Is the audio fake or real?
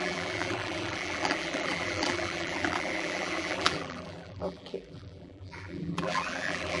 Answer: fake